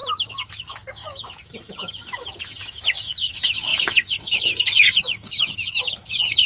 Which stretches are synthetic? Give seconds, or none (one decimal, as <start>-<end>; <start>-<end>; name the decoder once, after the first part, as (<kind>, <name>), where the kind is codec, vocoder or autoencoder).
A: 0.0-6.5 (autoencoder, DAC-VAE)